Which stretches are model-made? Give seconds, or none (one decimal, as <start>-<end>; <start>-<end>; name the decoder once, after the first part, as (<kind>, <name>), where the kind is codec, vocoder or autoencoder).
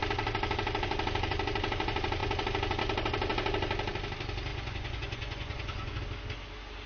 4.5-6.0 (vocoder, Vocos)